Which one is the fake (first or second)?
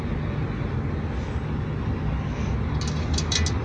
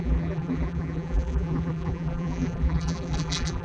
second